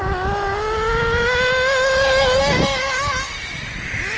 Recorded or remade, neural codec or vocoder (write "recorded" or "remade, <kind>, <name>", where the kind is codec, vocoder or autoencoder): recorded